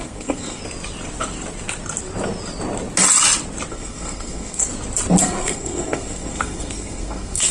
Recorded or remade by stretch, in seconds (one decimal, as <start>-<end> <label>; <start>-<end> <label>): 0.0-0.6 remade; 0.6-3.7 recorded; 3.7-4.7 remade; 4.7-5.2 recorded; 5.2-7.5 remade